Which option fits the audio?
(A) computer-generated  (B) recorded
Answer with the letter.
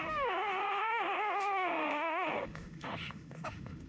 A